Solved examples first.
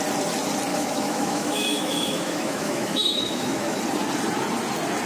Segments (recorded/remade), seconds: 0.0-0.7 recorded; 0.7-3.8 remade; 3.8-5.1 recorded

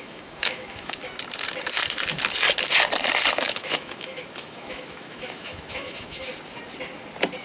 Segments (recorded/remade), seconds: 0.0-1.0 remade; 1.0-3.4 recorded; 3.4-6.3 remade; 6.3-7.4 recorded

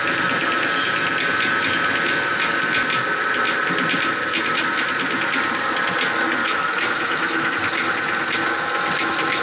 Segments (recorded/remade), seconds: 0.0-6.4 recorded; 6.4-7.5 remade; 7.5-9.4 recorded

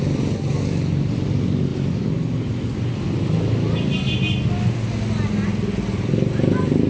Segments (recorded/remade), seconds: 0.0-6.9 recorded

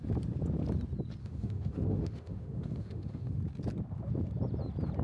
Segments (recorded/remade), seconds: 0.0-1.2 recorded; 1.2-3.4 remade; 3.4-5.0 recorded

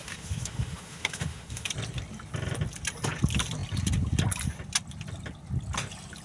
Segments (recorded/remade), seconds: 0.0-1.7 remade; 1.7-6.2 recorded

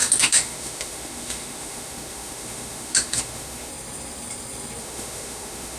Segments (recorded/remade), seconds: 0.0-3.7 remade; 3.7-4.8 recorded; 4.8-5.8 remade

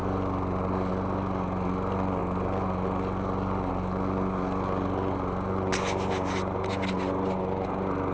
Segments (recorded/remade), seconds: 0.0-8.1 recorded